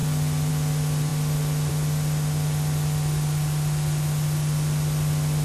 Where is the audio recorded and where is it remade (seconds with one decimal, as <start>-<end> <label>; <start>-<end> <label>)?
0.0-5.4 recorded